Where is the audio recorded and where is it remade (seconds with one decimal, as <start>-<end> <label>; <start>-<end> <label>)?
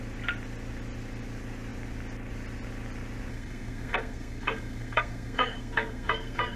0.0-3.3 recorded; 3.3-6.6 remade